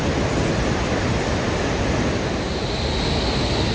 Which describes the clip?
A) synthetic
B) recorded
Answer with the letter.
B